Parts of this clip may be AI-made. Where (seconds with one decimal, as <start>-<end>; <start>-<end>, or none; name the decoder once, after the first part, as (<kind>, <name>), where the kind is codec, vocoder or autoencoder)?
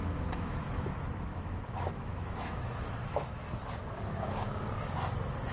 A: 0.0-0.9 (autoencoder, DAC-VAE); 1.3-4.6